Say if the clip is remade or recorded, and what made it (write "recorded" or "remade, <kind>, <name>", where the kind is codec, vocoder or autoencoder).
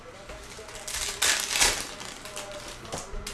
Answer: recorded